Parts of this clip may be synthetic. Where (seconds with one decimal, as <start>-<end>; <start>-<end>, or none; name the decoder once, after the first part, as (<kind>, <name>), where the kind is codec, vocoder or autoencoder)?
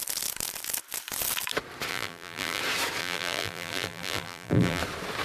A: 1.9-2.6 (vocoder, BigVGAN v2); 3.0-4.8